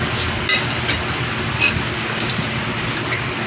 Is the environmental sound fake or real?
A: real